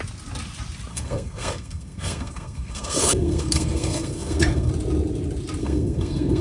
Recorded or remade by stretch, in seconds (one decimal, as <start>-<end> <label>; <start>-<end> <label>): 0.0-0.9 recorded; 0.9-4.7 remade; 4.7-5.6 recorded; 5.6-6.4 remade